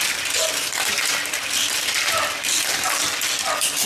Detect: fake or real real